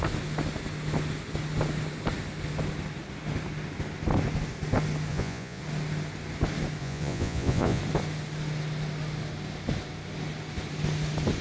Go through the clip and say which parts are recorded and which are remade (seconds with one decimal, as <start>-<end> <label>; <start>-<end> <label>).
0.0-5.1 recorded; 5.1-5.6 remade; 5.6-6.8 recorded; 6.8-7.8 remade; 7.8-11.4 recorded